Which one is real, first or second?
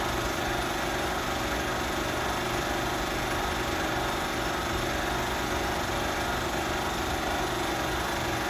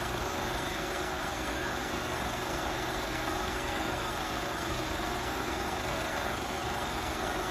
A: first